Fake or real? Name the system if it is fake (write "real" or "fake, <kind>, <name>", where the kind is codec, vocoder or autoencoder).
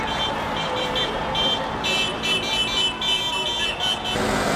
real